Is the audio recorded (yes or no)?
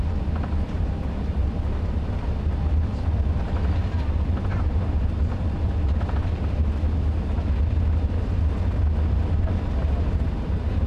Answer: yes